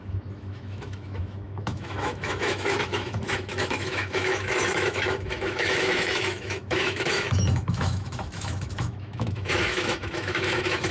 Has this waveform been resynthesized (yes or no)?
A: yes